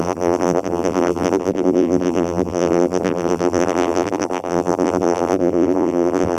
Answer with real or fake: fake